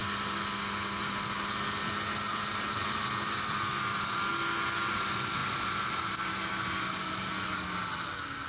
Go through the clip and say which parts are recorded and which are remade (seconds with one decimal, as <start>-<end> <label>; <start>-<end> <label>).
0.0-8.5 recorded